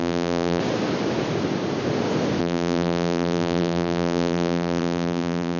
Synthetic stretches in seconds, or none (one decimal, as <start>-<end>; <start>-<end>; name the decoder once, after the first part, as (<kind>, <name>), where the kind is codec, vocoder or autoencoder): 0.0-0.6 (vocoder, BigVGAN v2); 2.4-5.6